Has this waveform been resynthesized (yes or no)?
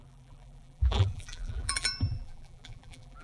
yes